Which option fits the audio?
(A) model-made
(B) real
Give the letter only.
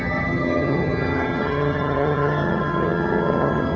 A